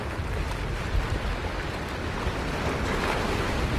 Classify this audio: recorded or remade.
recorded